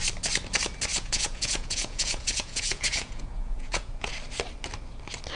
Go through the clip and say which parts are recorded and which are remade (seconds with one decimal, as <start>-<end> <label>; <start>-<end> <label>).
0.0-0.9 recorded; 0.9-4.1 remade; 4.1-5.4 recorded